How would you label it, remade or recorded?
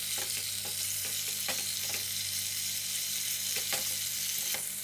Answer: recorded